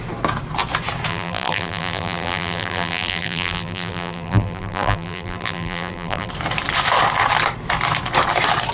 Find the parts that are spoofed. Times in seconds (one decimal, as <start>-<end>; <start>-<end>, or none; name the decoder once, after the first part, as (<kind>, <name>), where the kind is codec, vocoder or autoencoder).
1.1-6.3 (vocoder, BigVGAN v2)